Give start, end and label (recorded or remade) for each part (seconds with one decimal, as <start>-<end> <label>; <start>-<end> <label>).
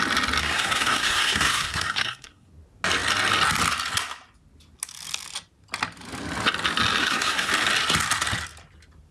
0.0-0.4 recorded; 0.4-2.5 remade; 2.5-7.0 recorded; 7.0-7.5 remade; 7.5-9.1 recorded